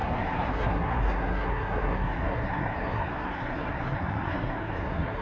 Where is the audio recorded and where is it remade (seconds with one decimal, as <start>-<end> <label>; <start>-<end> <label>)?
0.0-5.2 remade

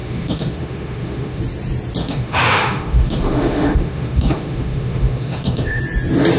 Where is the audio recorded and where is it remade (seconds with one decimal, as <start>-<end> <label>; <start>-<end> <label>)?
0.0-1.4 remade; 1.4-2.0 recorded; 2.0-5.8 remade; 5.8-6.4 recorded

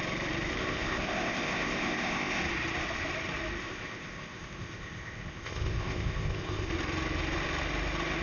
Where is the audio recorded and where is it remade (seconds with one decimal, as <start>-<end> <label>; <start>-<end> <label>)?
0.0-0.5 recorded; 0.5-2.4 remade; 2.4-3.6 recorded; 3.6-6.7 remade; 6.7-8.2 recorded

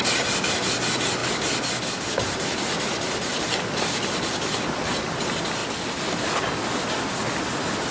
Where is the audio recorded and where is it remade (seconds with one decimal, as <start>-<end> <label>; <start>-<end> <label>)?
0.0-5.6 recorded; 5.6-7.4 remade; 7.4-7.9 recorded